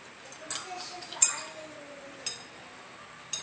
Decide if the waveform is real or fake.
real